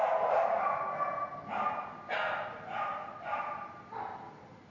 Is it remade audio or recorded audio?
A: recorded